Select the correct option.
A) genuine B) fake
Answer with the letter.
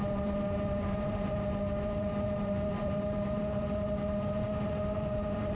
B